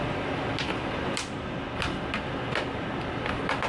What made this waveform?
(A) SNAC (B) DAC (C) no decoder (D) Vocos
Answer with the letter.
C